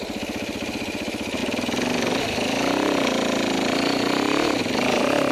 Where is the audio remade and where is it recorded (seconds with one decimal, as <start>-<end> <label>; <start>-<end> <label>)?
0.0-5.3 recorded